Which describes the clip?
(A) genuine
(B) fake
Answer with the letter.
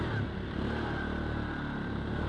A